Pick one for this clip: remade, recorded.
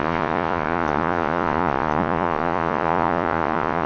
remade